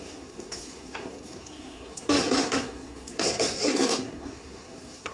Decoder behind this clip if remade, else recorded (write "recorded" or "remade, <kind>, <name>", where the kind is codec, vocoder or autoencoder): remade, codec, SNAC